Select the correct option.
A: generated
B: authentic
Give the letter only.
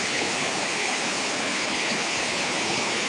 A